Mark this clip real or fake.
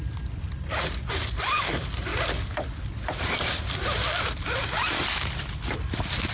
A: real